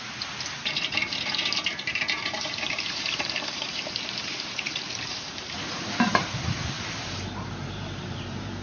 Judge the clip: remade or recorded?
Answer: remade